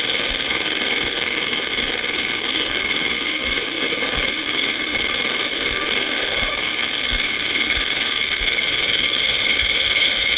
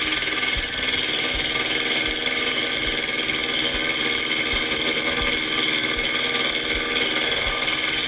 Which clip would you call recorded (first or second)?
second